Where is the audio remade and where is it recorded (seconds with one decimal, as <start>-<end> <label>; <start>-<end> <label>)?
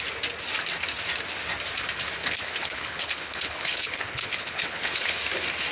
0.0-2.2 recorded; 2.2-5.2 remade; 5.2-5.7 recorded